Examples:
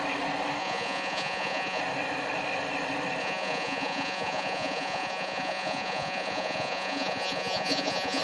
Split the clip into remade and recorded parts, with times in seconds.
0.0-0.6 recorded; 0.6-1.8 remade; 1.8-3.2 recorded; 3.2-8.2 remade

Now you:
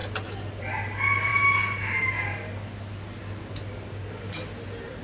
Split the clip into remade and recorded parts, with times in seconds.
0.0-5.0 recorded

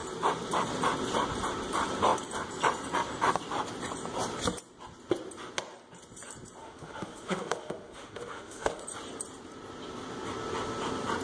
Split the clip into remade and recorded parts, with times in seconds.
0.0-6.6 recorded; 6.6-8.8 remade; 8.8-11.2 recorded